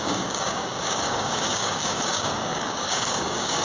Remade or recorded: remade